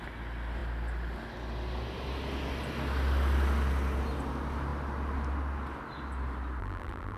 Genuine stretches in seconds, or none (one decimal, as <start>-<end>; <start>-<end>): 0.0-6.6